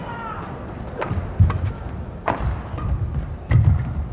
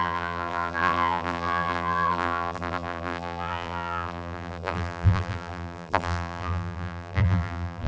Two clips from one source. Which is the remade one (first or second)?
second